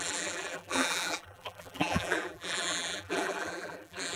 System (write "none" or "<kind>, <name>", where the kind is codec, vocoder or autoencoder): vocoder, BigVGAN v2